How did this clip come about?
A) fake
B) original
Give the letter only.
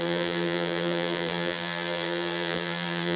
A